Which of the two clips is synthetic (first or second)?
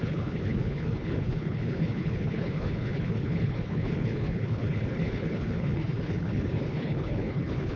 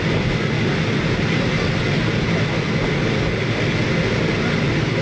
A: first